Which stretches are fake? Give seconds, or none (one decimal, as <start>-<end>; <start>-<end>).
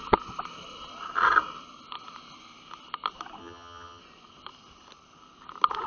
3.4-4.0